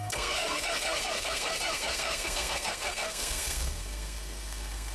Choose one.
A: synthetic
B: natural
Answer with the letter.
A